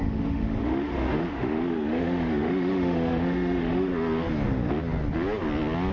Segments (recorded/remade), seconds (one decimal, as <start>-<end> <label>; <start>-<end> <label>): 0.0-3.9 remade; 3.9-5.9 recorded